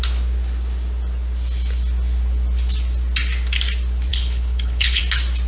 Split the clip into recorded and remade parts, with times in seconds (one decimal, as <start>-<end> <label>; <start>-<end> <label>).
0.0-4.1 recorded; 4.1-5.0 remade; 5.0-5.5 recorded